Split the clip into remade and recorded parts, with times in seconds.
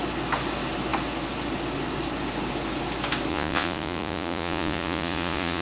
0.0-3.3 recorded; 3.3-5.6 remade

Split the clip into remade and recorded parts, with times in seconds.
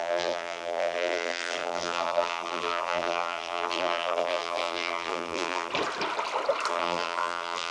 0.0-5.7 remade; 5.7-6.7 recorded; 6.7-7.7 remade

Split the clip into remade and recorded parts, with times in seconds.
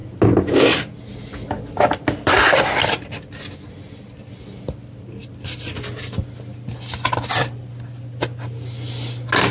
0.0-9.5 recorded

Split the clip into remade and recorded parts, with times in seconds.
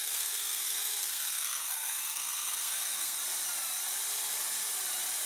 0.0-3.2 remade; 3.2-5.3 recorded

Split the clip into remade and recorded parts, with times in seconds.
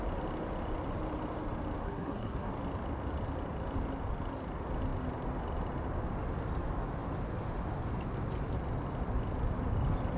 0.0-1.8 recorded; 1.8-2.5 remade; 2.5-10.2 recorded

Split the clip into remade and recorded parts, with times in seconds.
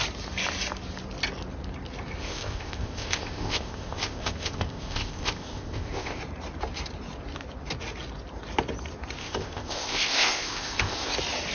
0.0-2.2 recorded; 2.2-6.2 remade; 6.2-9.2 recorded; 9.2-11.1 remade; 11.1-11.5 recorded